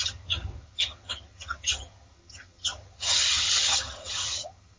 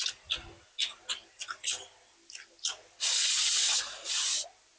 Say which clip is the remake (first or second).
first